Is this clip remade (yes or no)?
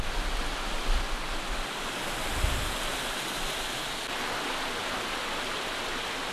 no